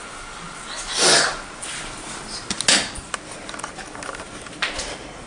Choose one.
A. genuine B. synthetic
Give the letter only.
A